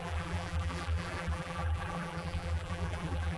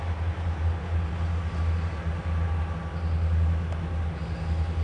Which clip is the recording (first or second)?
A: second